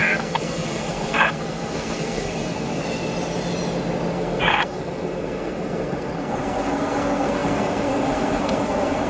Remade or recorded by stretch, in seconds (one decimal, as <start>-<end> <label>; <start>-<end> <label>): 0.0-2.8 remade; 2.8-4.1 recorded; 4.1-9.1 remade